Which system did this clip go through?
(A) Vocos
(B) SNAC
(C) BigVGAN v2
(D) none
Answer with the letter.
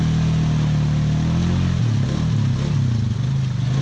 D